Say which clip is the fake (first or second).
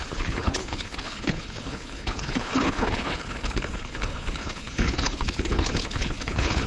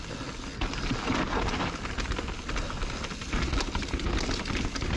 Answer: first